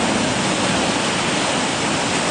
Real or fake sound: real